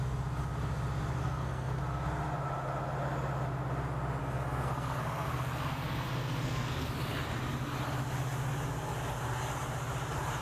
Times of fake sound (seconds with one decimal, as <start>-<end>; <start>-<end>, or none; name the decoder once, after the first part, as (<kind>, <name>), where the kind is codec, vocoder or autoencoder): 1.2-1.8 (codec, SNAC); 4.2-6.9

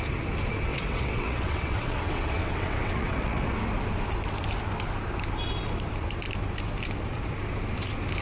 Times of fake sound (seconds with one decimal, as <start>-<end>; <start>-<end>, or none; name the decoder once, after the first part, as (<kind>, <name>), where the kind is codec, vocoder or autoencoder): 0.7-3.5 (vocoder, WaveNeXt)

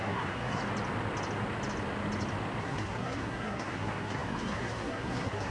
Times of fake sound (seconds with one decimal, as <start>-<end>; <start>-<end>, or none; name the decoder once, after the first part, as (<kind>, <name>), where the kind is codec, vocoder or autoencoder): 0.0-0.6 (codec, SNAC); 2.6-5.5